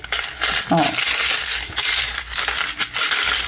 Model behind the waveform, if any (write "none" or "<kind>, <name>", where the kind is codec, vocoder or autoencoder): none